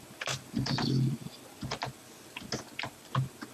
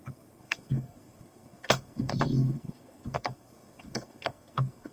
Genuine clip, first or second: first